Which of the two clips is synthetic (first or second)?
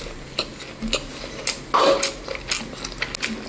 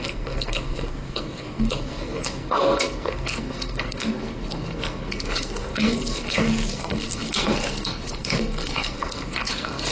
second